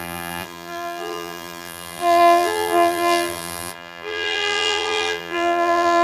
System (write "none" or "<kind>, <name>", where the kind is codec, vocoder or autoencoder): vocoder, BigVGAN v2